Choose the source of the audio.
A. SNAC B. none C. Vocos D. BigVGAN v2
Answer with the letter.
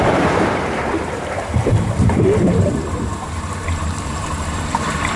D